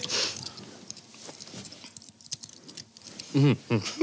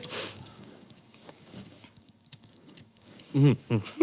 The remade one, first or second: second